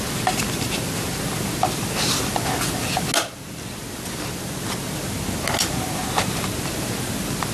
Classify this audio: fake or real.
real